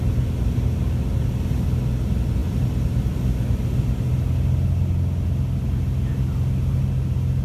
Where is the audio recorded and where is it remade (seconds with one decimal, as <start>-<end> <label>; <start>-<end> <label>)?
0.0-7.4 recorded